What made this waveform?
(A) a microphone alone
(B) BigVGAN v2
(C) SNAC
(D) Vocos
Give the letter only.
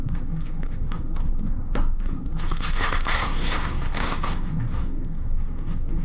C